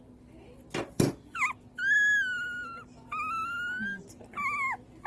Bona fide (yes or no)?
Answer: yes